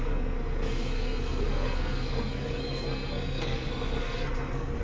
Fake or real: fake